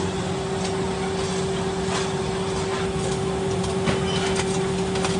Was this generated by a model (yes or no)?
no